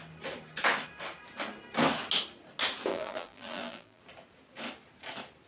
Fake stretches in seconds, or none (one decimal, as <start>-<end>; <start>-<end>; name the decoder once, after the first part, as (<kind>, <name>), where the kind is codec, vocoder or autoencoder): 2.9-4.0 (vocoder, BigVGAN v2)